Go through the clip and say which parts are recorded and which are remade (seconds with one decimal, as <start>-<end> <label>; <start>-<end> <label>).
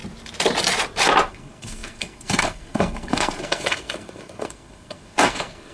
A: 0.0-1.3 recorded; 1.3-5.7 remade